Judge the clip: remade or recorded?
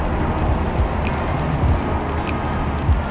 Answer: recorded